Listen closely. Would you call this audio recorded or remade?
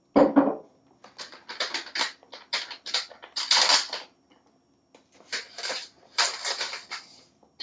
recorded